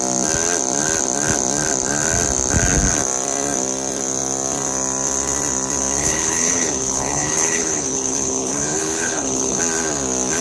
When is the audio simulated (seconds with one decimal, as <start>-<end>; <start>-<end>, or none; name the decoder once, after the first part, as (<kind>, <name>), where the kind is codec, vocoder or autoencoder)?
6.0-9.6 (codec, HILCodec)